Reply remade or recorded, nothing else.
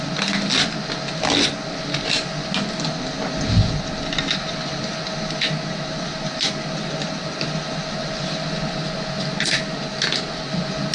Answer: recorded